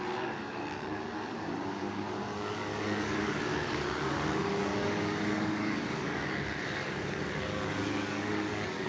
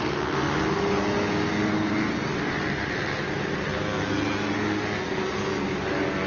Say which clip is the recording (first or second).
second